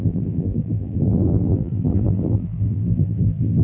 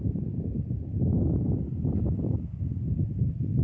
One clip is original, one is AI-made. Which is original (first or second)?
second